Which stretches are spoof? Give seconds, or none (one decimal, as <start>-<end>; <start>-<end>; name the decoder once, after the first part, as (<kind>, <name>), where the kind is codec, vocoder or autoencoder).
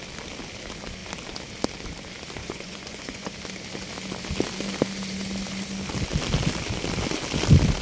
2.4-3.3 (vocoder, Vocos)